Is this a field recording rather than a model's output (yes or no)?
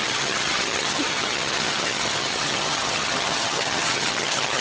no